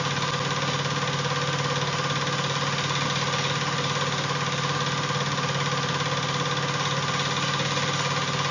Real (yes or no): yes